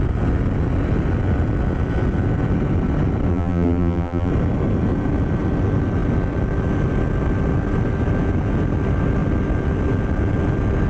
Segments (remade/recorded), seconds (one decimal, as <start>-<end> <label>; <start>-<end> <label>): 0.0-3.3 recorded; 3.3-4.3 remade; 4.3-10.9 recorded